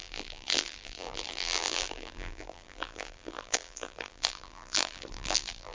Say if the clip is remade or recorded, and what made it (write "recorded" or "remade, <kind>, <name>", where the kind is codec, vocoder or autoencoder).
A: remade, vocoder, BigVGAN v2